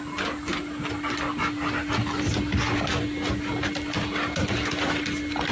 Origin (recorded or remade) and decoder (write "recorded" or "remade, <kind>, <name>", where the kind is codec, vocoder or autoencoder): recorded